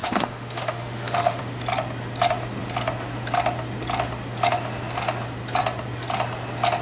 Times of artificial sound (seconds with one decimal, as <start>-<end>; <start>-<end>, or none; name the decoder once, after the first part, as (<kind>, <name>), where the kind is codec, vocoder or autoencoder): 0.0-1.4 (autoencoder, DAC-VAE)